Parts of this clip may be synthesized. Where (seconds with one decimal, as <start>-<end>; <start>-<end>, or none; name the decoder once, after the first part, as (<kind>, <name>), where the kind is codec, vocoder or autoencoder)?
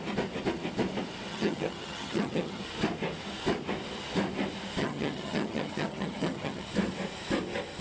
1.3-2.6 (vocoder, HiFi-GAN); 4.8-6.7